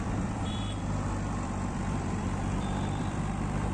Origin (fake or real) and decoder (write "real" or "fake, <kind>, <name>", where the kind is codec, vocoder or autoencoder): fake, vocoder, BigVGAN v2